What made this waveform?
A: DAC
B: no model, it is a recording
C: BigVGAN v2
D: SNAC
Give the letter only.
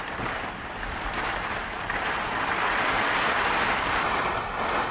C